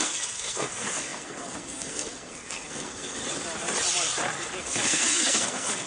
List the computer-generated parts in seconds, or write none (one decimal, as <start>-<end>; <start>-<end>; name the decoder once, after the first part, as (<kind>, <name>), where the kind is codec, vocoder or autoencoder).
0.0-3.2 (codec, SNAC); 4.6-5.9